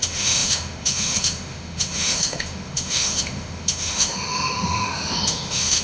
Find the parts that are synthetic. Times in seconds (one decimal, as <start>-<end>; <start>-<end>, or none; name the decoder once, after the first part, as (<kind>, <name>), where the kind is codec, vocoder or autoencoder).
0.0-5.8 (autoencoder, DAC-VAE)

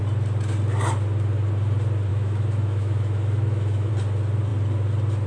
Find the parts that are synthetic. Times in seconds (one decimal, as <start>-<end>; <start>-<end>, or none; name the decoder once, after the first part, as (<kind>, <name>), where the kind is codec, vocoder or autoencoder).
2.1-3.9 (autoencoder, DAC-VAE)

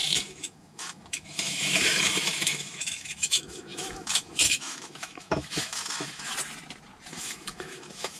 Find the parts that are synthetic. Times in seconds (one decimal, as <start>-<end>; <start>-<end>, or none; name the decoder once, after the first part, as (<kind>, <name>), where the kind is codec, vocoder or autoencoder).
0.0-6.3 (autoencoder, DAC-VAE); 7.1-8.2